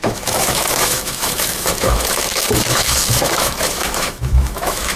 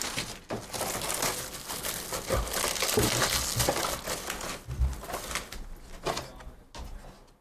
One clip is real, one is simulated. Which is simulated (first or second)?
first